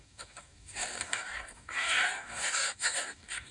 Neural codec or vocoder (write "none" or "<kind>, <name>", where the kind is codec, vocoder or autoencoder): codec, DAC